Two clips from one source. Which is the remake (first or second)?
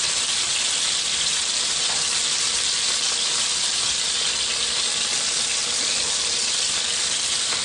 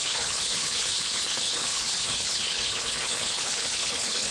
second